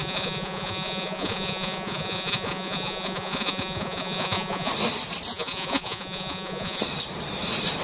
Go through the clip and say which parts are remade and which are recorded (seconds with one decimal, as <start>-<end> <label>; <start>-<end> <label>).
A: 0.0-4.7 remade; 4.7-5.3 recorded; 5.3-6.8 remade; 6.8-7.8 recorded